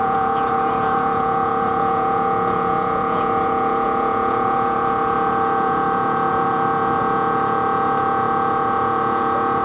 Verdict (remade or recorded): remade